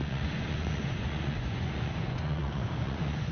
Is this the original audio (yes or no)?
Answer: no